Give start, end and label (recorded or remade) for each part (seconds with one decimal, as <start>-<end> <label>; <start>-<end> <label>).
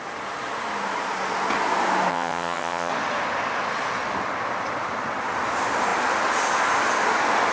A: 0.0-2.1 recorded; 2.1-2.9 remade; 2.9-7.5 recorded